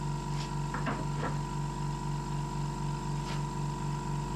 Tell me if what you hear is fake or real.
real